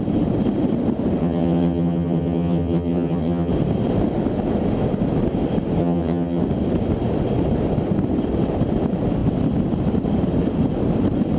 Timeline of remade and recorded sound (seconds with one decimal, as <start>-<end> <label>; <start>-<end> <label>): 0.0-1.2 recorded; 1.2-3.5 remade; 3.5-5.8 recorded; 5.8-6.4 remade; 6.4-11.4 recorded